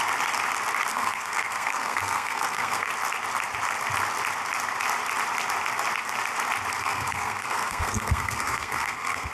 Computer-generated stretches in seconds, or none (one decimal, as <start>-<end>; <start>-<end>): 0.9-2.9; 6.8-9.3